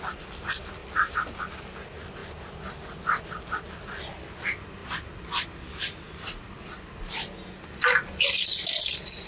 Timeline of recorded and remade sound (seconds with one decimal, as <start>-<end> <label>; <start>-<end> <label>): 0.0-9.3 recorded